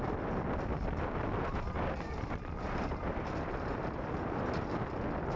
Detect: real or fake real